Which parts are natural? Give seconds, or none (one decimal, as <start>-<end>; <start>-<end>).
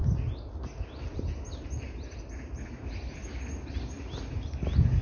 0.0-5.0